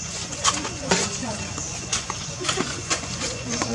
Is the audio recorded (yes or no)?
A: no